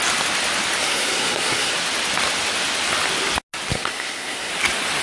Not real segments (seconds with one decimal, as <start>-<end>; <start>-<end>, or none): 0.8-1.7; 3.7-4.5